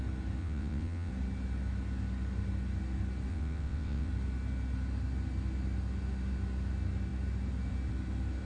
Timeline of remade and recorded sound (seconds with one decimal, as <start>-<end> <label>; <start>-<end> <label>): 0.0-0.4 recorded; 0.4-1.1 remade; 1.1-3.3 recorded; 3.3-4.1 remade; 4.1-8.5 recorded